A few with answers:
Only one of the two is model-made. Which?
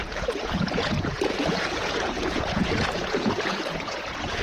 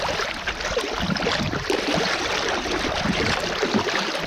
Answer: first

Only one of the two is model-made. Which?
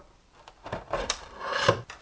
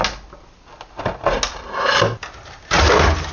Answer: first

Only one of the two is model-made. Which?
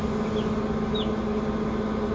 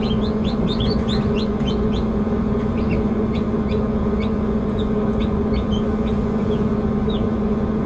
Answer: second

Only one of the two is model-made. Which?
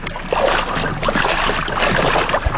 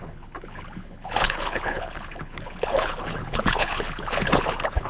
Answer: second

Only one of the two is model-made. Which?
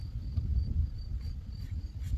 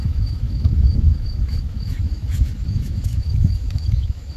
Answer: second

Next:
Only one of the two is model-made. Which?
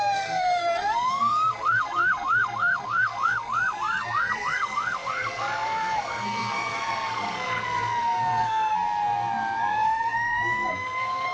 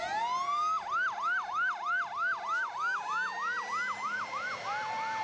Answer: first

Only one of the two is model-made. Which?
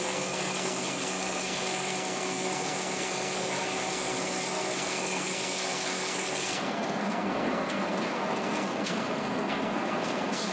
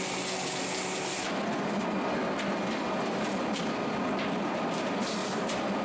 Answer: first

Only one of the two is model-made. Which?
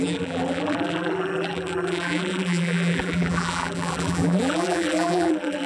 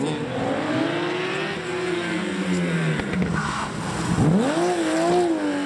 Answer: first